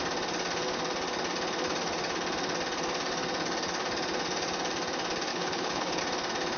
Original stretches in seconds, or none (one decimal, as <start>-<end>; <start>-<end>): 0.0-5.3; 6.0-6.6